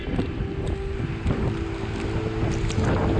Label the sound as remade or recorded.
recorded